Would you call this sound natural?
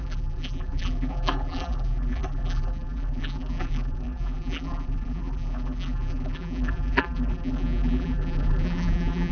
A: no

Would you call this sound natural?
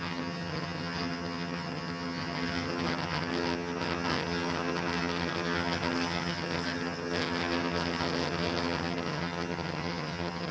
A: no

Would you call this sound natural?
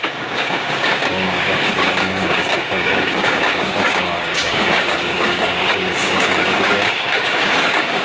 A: no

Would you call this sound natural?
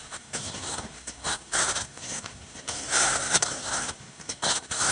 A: no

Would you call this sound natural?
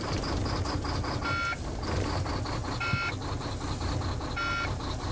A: yes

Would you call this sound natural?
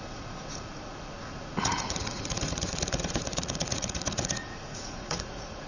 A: no